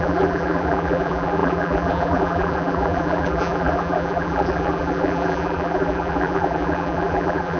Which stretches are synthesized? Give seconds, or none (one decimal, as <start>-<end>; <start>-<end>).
0.0-7.6